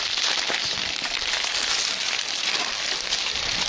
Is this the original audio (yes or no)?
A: yes